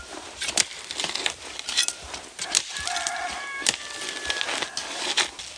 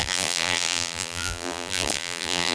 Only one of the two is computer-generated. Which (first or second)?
second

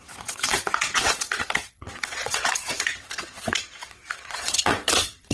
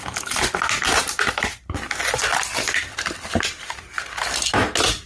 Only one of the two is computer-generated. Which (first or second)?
first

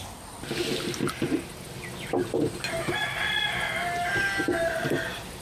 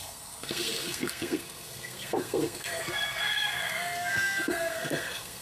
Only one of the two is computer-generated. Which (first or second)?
second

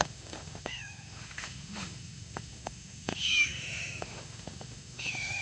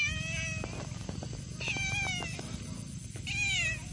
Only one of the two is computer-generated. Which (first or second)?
first